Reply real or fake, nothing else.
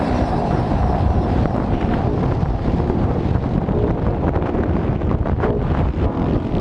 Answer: fake